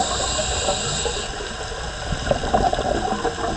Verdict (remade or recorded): recorded